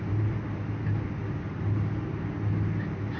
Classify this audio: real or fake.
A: real